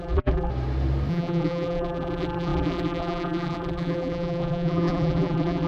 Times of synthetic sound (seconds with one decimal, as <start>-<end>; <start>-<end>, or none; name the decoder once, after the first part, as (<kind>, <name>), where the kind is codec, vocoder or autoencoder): 0.0-0.5 (vocoder, BigVGAN v2); 1.1-5.7